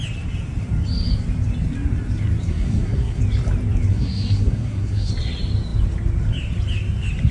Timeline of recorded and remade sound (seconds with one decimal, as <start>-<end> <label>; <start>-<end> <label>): 0.0-2.5 recorded; 2.5-3.2 remade; 3.2-3.9 recorded; 3.9-5.1 remade; 5.1-7.3 recorded